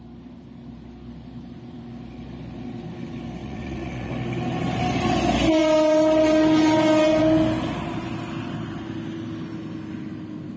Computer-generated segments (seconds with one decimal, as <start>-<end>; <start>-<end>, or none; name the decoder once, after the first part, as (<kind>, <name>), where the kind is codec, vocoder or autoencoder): 3.4-4.1 (vocoder, Vocos)